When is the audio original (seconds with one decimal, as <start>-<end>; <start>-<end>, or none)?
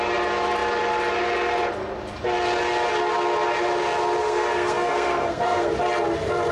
0.0-4.2; 5.7-6.5